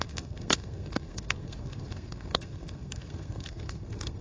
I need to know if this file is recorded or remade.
remade